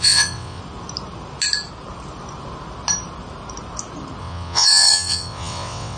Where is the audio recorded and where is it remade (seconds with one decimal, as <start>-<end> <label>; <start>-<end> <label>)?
0.0-0.6 remade; 0.6-4.2 recorded; 4.2-6.0 remade